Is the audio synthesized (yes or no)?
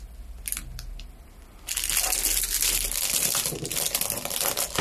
yes